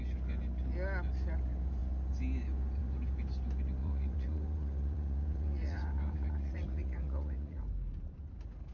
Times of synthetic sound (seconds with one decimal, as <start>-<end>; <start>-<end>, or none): 3.8-7.6